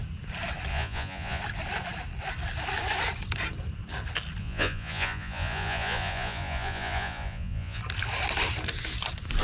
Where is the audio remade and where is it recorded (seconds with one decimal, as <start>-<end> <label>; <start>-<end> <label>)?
0.0-0.7 recorded; 0.7-1.4 remade; 1.4-4.4 recorded; 4.4-7.8 remade; 7.8-9.4 recorded